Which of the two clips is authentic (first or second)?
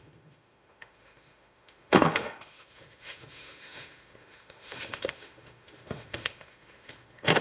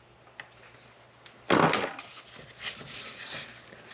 second